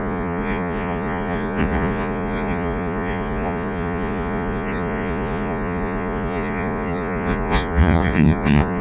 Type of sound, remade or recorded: remade